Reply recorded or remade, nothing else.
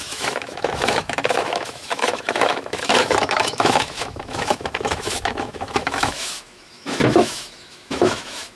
remade